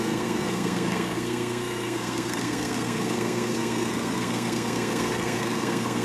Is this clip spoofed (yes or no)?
yes